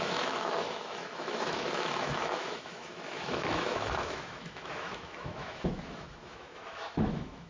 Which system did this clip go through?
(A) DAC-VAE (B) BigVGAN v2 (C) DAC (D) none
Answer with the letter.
A